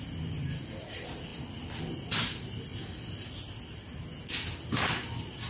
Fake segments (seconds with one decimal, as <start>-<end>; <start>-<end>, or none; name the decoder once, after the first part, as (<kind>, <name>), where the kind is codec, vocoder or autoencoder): none